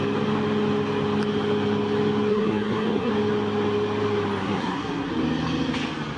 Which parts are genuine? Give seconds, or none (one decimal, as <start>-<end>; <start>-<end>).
0.0-2.3; 3.1-4.4; 5.1-6.2